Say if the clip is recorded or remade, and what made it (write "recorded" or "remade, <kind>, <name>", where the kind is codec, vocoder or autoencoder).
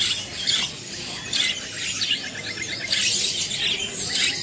recorded